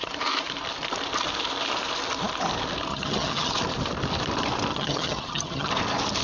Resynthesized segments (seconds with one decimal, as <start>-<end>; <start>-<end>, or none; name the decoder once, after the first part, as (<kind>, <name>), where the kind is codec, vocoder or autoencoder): 2.9-3.5 (vocoder, HiFi-GAN); 4.7-5.7